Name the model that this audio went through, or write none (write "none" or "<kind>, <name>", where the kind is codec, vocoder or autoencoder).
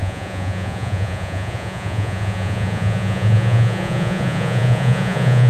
vocoder, Vocos